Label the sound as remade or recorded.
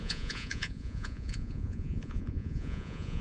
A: remade